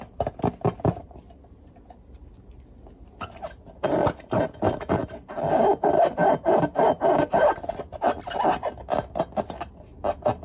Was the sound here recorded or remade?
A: recorded